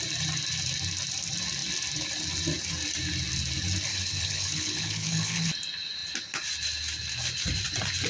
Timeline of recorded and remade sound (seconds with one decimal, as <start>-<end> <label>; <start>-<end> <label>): 0.0-3.9 recorded; 3.9-5.5 remade; 5.5-8.1 recorded